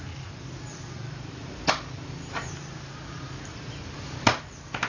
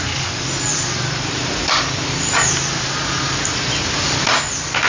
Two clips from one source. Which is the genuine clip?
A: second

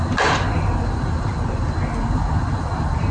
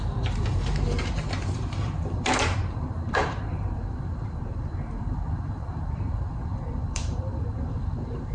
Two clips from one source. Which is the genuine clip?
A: first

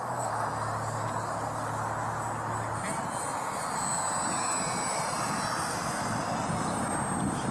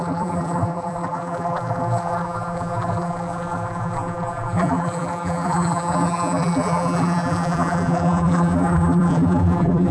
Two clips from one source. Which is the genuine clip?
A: first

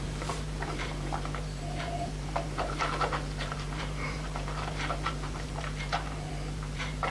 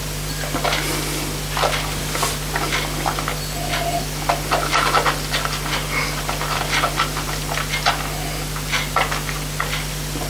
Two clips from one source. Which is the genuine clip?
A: second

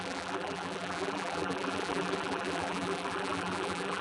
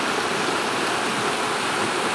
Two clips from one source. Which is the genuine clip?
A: second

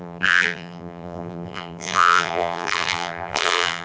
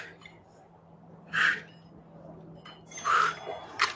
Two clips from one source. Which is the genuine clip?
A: second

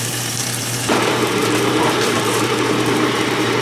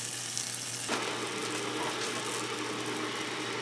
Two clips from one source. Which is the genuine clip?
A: second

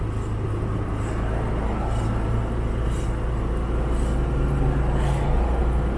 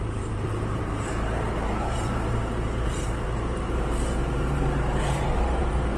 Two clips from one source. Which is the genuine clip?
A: first